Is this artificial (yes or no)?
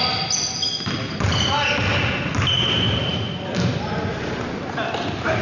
no